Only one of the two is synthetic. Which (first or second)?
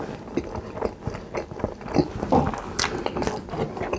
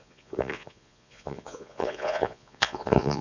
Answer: second